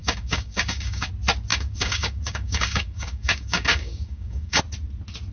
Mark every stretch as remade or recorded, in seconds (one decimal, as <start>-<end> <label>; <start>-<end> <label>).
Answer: 0.0-1.1 remade; 1.1-1.5 recorded; 1.5-4.6 remade; 4.6-5.3 recorded